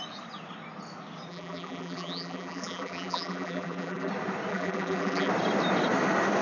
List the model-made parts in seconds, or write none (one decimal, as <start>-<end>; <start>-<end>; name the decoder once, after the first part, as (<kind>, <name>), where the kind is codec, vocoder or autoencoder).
1.3-4.1 (vocoder, BigVGAN v2); 4.5-5.3